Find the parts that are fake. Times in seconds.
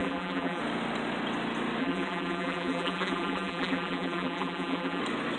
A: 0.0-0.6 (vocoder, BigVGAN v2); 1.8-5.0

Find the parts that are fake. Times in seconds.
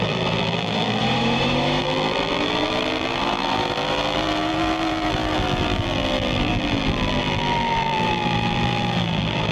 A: 0.0-1.0 (vocoder, BigVGAN v2); 1.8-9.5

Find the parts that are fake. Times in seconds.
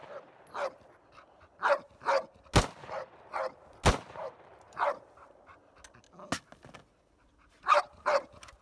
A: 4.1-5.6 (vocoder, BigVGAN v2); 7.2-8.6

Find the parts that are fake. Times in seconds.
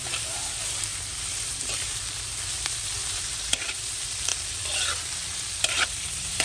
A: 0.0-4.3 (vocoder, BigVGAN v2); 5.1-6.4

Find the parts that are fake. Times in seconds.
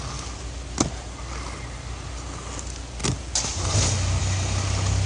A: 3.0-4.2 (vocoder, BigVGAN v2)